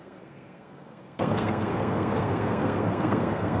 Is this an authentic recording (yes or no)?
no